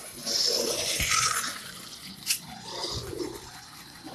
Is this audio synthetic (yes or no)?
yes